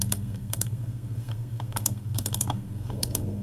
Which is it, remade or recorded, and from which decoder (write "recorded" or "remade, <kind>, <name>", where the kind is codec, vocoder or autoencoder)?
remade, codec, SNAC